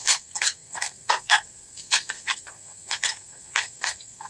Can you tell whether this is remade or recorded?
remade